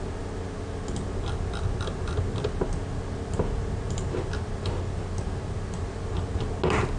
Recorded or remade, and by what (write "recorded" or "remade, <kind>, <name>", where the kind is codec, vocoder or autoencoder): recorded